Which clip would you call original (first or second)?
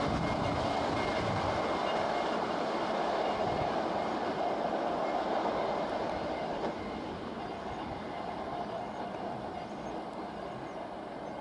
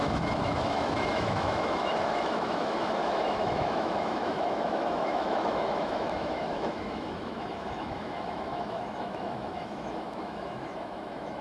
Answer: first